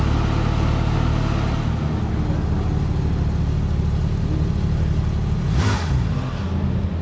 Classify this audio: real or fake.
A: real